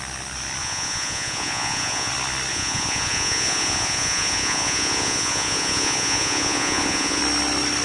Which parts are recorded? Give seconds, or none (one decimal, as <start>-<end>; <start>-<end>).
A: 0.0-0.6; 2.1-2.5; 7.2-7.8